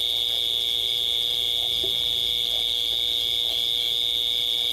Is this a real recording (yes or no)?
yes